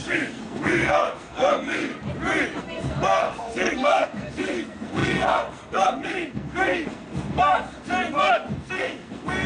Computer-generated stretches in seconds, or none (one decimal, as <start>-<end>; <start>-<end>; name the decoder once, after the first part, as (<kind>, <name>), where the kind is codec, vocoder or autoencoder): 0.0-1.9 (codec, SNAC); 2.6-9.5